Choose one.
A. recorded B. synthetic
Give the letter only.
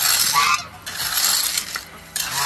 A